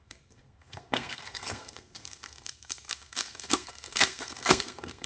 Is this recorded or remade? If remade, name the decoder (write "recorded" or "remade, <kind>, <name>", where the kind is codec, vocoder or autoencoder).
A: remade, codec, SNAC